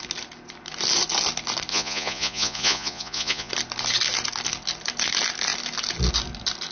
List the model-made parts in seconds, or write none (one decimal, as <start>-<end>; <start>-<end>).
1.7-3.5

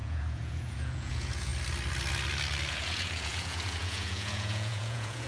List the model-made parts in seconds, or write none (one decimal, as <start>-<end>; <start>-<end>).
0.0-1.5; 2.7-5.3

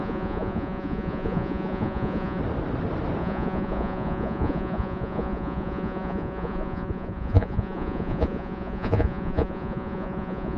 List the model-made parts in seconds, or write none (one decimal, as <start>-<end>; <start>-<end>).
0.0-2.4; 3.2-10.6

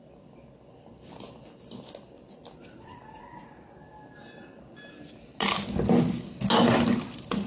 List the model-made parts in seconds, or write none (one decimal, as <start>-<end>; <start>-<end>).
none

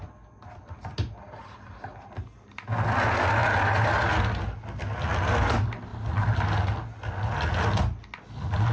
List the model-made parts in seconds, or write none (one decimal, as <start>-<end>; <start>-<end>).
none

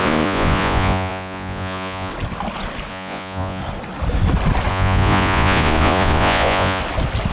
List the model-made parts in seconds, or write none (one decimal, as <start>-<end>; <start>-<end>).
0.0-2.1; 2.9-3.6; 4.7-6.8

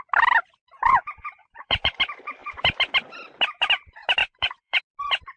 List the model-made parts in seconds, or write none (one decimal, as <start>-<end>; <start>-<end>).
1.4-2.0; 4.2-4.8